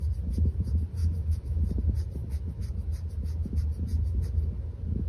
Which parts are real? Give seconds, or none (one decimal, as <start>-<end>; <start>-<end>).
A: 0.0-1.0; 1.6-5.1